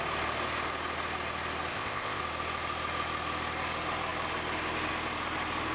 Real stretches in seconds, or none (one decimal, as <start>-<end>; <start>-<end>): 0.0-1.7; 2.2-5.7

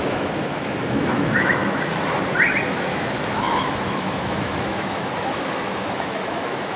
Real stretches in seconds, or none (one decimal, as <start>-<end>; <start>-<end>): 1.6-2.7

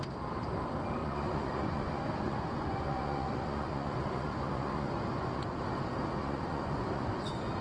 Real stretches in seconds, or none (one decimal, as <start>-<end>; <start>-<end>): 0.0-1.0; 5.6-6.2; 7.1-7.6

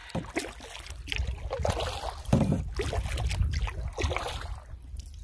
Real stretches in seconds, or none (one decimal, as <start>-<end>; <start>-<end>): 0.0-2.2; 3.3-4.3

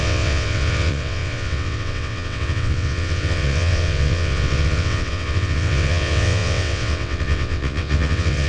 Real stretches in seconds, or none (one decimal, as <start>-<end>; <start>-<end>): none